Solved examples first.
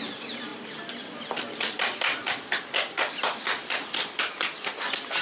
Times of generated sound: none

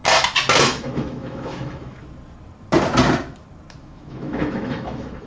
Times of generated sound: 0.6-2.0 (autoencoder, DAC-VAE); 3.8-5.3

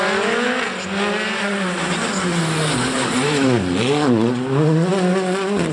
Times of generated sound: none

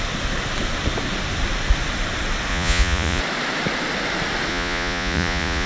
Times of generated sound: 2.5-3.2 (vocoder, Vocos); 4.5-5.7

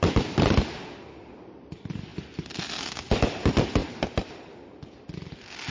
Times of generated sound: none

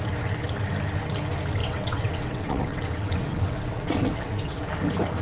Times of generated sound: 1.6-4.7 (vocoder, WaveNeXt)